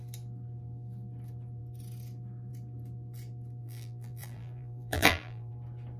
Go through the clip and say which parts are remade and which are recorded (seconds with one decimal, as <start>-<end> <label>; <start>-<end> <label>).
0.0-3.6 recorded; 3.6-5.5 remade; 5.5-6.0 recorded